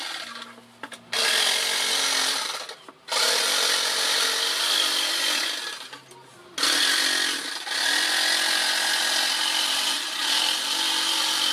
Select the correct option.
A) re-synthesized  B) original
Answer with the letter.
B